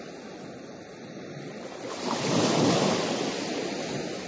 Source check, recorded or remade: recorded